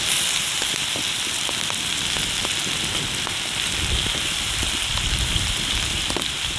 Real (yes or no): yes